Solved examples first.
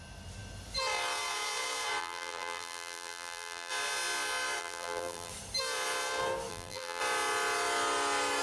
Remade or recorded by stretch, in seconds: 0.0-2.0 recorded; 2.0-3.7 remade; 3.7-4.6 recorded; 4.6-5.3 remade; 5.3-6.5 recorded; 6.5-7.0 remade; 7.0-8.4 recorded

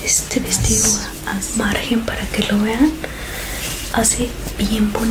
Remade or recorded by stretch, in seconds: 0.0-5.1 recorded

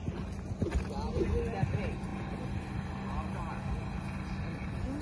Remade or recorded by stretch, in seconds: 0.0-5.0 recorded

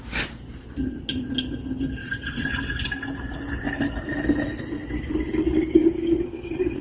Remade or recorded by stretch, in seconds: 0.0-2.0 recorded; 2.0-2.5 remade; 2.5-5.8 recorded; 5.8-6.8 remade